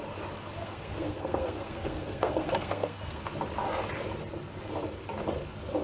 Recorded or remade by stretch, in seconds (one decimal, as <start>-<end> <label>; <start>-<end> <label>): 0.0-0.6 recorded; 0.6-3.2 remade; 3.2-5.8 recorded